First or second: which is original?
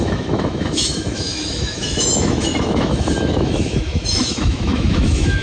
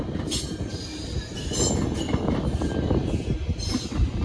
second